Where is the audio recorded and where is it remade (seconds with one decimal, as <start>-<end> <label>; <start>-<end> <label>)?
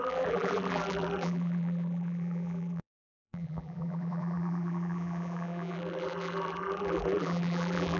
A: 0.0-8.0 remade